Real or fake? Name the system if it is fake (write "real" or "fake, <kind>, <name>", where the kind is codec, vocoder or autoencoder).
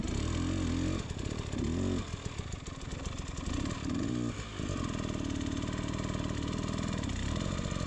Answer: real